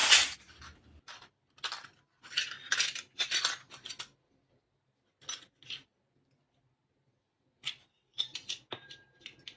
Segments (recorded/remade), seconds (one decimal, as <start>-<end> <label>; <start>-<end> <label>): 0.0-9.6 recorded